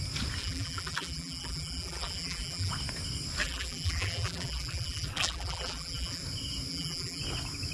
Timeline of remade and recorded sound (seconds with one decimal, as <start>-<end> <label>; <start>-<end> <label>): 0.0-0.4 recorded; 0.4-2.7 remade; 2.7-3.4 recorded; 3.4-6.2 remade; 6.2-6.7 recorded; 6.7-7.2 remade; 7.2-7.7 recorded